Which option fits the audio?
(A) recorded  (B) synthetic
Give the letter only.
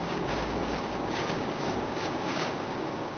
B